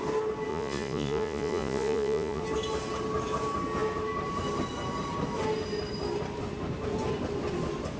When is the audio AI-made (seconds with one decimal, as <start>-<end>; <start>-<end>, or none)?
0.5-2.4